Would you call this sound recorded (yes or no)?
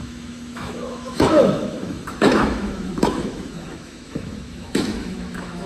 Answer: no